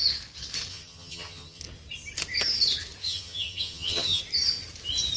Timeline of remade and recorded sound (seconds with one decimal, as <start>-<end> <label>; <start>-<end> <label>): 0.0-0.7 recorded; 0.7-1.6 remade; 1.6-3.0 recorded; 3.0-4.2 remade; 4.2-5.2 recorded